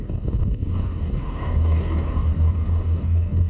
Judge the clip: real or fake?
fake